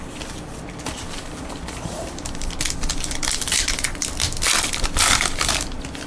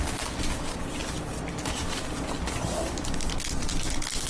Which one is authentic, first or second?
second